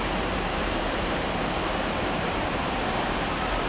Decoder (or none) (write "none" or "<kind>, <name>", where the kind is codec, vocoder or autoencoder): vocoder, BigVGAN v2